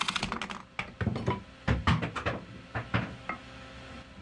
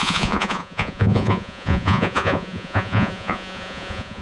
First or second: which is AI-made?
second